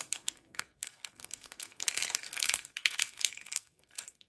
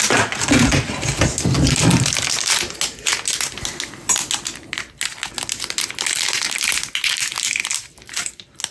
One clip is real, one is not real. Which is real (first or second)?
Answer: second